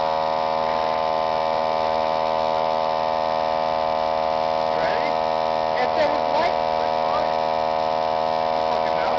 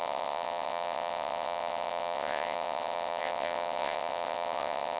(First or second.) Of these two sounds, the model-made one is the second